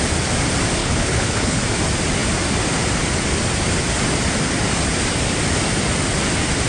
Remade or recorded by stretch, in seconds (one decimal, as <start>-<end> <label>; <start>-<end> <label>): 0.0-0.8 recorded; 0.8-1.6 remade; 1.6-6.7 recorded